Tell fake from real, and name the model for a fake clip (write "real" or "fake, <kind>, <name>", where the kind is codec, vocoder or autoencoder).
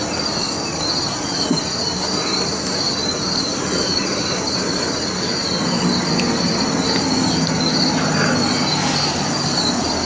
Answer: real